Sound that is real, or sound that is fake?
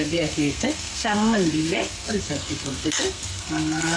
fake